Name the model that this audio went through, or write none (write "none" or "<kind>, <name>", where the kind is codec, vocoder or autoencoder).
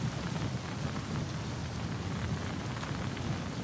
none